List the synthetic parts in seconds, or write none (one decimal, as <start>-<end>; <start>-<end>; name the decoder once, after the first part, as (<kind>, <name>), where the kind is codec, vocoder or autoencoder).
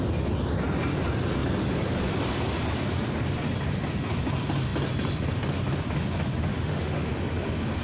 6.5-7.1 (autoencoder, DAC-VAE)